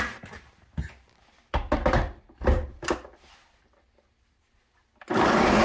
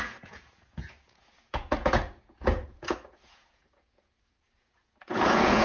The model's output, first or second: second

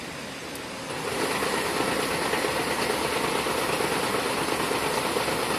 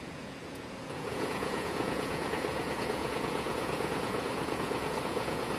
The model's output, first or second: second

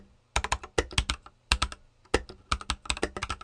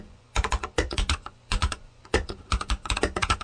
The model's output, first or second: second